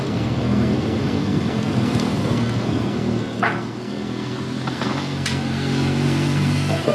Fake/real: fake